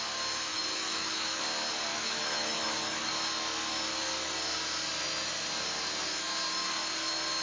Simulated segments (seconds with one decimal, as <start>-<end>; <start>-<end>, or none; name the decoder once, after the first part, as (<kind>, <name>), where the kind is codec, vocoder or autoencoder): 0.5-1.4 (autoencoder, DAC-VAE); 1.9-3.1

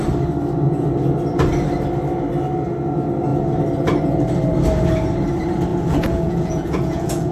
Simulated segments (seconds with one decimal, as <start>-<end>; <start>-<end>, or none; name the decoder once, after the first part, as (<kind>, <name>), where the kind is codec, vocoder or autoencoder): 5.7-7.3 (vocoder, Vocos)

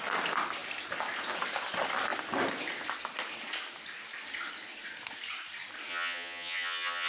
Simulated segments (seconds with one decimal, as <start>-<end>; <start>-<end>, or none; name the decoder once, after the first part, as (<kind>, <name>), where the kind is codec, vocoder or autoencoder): 5.9-7.1 (vocoder, HiFi-GAN)

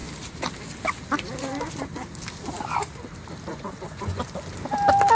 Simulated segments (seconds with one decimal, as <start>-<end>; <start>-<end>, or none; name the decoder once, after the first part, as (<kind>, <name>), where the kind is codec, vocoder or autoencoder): 3.5-4.2 (vocoder, Vocos)

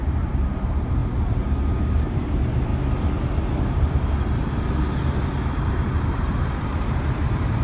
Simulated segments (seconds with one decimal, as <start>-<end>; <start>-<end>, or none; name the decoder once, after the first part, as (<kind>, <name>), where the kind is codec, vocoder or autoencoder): 0.0-1.0 (vocoder, BigVGAN v2); 1.8-2.7; 5.7-7.6

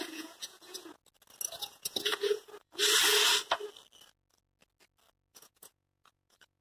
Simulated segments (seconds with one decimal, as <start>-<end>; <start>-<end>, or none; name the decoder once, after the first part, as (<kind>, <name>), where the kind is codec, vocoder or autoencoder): 0.0-1.0 (vocoder, Vocos); 1.6-2.8; 5.3-6.6